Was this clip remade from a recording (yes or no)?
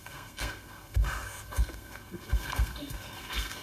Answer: yes